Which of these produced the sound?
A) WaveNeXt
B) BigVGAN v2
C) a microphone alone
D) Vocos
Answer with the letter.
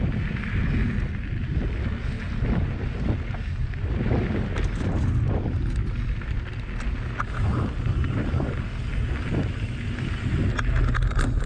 C